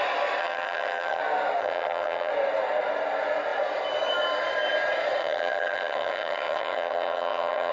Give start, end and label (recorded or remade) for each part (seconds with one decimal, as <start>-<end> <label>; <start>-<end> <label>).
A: 0.0-0.4 recorded; 0.4-1.2 remade; 1.2-1.6 recorded; 1.6-2.3 remade; 2.3-5.2 recorded; 5.2-7.7 remade